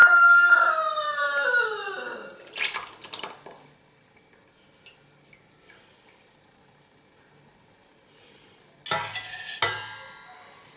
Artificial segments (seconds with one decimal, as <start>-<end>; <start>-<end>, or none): none